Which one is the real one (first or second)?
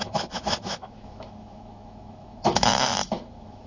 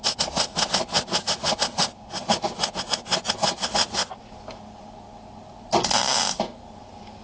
second